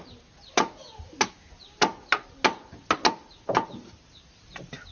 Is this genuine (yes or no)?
yes